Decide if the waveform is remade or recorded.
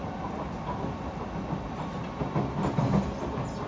recorded